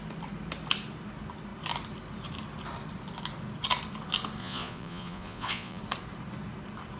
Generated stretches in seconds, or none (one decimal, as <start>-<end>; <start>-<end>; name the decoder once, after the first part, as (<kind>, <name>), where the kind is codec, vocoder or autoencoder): 4.4-5.8 (vocoder, Vocos)